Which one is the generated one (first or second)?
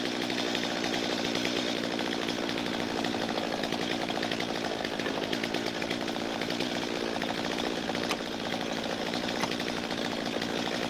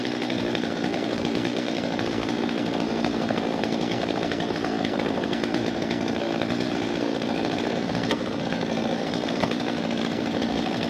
second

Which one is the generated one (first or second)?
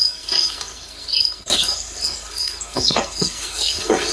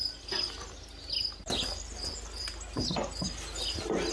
first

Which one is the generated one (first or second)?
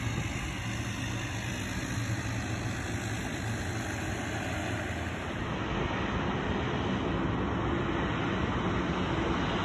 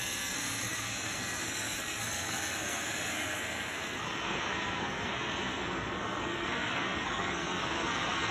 second